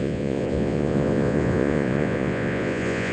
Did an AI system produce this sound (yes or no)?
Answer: yes